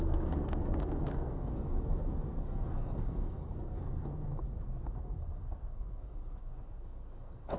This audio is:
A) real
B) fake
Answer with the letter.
B